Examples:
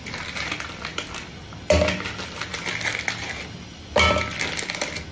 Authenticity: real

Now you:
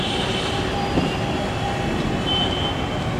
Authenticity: real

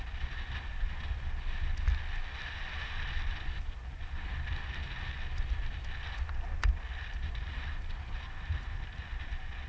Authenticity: real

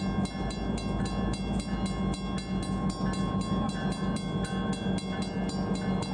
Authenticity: real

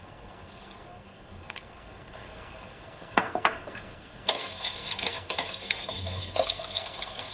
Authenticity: fake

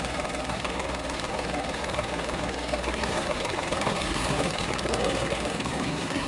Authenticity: fake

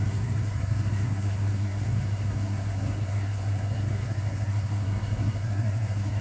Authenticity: fake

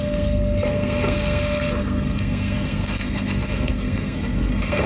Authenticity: fake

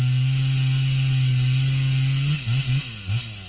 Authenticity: real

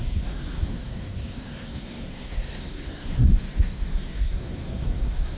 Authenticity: fake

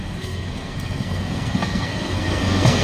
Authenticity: fake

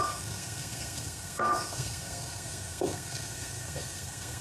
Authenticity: fake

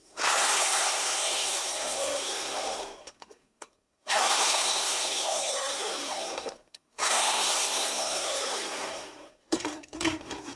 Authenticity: fake